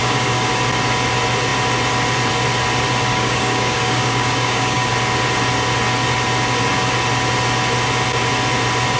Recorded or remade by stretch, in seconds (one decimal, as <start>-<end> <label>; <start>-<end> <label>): 0.0-0.5 remade; 0.5-3.1 recorded; 3.1-4.9 remade; 4.9-9.0 recorded